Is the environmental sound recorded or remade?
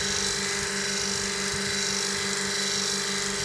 recorded